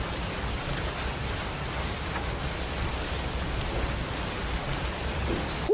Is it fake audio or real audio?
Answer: fake